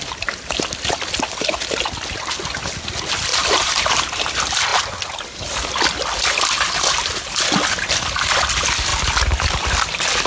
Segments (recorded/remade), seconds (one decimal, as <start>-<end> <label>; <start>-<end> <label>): 0.0-3.3 recorded; 3.3-4.1 remade; 4.1-10.3 recorded